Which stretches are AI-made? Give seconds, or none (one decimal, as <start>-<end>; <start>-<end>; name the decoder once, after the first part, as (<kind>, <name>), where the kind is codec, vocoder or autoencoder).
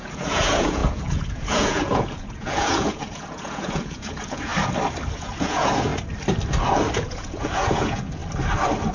0.0-4.5 (vocoder, Vocos); 5.1-5.9; 6.9-8.2